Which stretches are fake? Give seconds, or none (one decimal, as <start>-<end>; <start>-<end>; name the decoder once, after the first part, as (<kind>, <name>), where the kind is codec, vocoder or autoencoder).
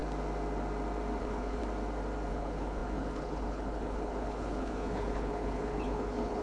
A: 1.2-1.6 (codec, HILCodec); 2.3-6.4